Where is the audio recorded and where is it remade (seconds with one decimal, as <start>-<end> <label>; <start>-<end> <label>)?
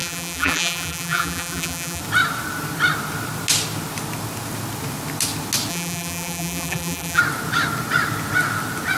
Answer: 0.0-2.0 remade; 2.0-5.7 recorded; 5.7-7.2 remade; 7.2-9.0 recorded